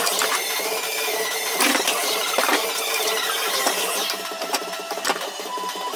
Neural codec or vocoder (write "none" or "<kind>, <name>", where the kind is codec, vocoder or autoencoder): vocoder, BigVGAN v2